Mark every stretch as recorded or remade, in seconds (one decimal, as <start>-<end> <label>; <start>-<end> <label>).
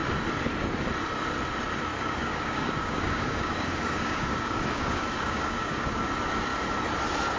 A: 0.0-1.9 recorded; 1.9-6.0 remade; 6.0-7.4 recorded